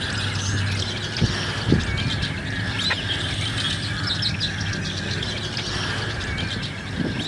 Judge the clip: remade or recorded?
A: recorded